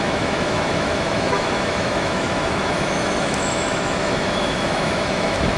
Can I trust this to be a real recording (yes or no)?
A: no